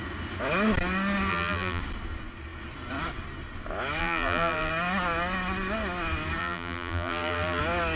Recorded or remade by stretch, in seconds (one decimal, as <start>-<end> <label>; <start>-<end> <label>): 0.0-1.3 recorded; 1.3-1.8 remade; 1.8-4.0 recorded; 4.0-4.7 remade; 4.7-6.4 recorded; 6.4-7.6 remade; 7.6-8.0 recorded